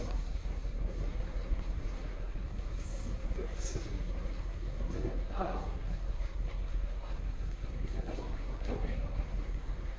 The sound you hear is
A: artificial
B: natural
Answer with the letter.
A